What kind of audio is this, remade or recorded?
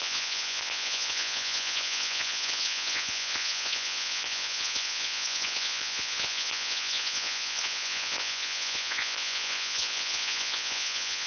remade